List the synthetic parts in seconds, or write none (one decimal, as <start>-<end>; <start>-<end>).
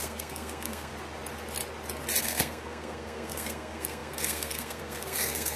0.0-0.9; 2.2-5.6